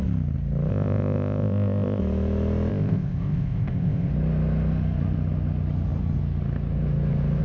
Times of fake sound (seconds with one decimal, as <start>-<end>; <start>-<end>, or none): 0.7-2.0; 2.7-4.1